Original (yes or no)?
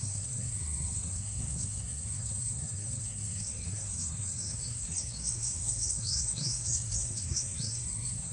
no